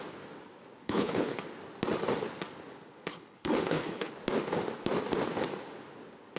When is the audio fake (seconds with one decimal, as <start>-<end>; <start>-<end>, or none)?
0.8-1.4; 3.1-4.1